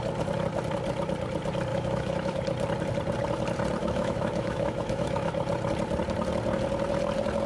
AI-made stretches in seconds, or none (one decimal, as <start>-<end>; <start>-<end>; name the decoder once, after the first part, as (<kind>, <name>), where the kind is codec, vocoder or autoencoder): 1.7-2.4 (autoencoder, DAC-VAE); 3.8-5.3